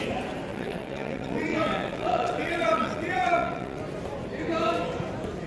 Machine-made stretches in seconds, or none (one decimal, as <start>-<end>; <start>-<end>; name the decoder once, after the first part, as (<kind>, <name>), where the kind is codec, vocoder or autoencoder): 0.5-3.8 (vocoder, WaveNeXt)